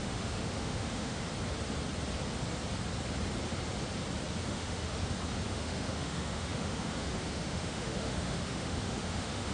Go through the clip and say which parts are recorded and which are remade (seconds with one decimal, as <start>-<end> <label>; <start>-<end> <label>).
0.0-1.2 remade; 1.2-4.5 recorded; 4.5-5.0 remade; 5.0-5.5 recorded; 5.5-9.5 remade